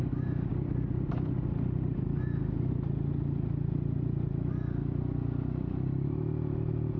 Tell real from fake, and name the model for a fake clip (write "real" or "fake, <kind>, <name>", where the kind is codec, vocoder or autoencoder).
real